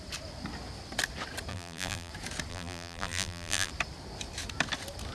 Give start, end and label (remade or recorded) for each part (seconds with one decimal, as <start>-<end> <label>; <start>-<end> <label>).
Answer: 0.0-1.5 recorded; 1.5-2.1 remade; 2.1-2.5 recorded; 2.5-3.7 remade; 3.7-5.1 recorded